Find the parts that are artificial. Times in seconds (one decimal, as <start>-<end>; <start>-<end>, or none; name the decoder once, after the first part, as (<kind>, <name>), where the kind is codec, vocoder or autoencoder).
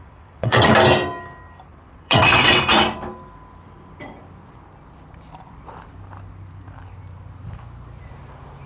0.0-0.7 (vocoder, WaveNeXt); 1.7-2.6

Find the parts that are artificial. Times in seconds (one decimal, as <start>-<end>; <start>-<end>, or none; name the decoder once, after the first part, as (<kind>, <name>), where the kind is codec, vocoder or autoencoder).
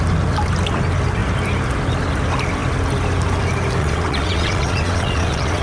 3.8-5.6 (vocoder, WaveNeXt)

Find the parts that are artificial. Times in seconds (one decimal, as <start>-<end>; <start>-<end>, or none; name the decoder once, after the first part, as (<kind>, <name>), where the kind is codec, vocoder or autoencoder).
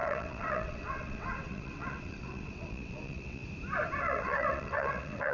0.0-3.4 (vocoder, WaveNeXt); 4.0-5.3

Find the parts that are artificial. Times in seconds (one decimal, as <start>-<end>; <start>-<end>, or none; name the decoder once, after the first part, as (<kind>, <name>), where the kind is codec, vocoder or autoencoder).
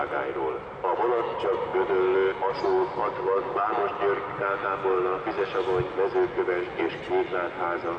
none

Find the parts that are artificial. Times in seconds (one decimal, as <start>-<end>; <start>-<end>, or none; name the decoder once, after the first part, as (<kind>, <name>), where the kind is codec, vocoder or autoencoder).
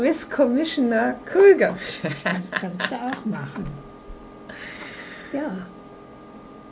none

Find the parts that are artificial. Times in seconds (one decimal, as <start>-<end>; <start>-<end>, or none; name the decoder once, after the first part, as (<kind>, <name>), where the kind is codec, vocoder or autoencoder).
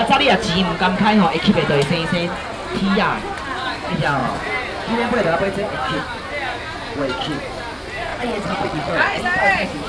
8.1-9.2 (vocoder, WaveNeXt)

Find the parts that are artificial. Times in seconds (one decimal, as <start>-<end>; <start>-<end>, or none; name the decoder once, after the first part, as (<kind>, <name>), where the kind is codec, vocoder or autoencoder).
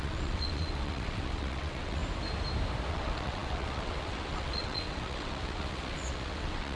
0.0-2.0 (vocoder, WaveNeXt); 2.9-6.8